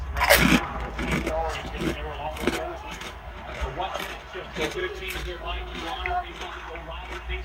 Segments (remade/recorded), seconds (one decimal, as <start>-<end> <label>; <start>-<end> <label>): 0.0-1.4 recorded; 1.4-3.3 remade; 3.3-4.8 recorded; 4.8-6.3 remade; 6.3-7.4 recorded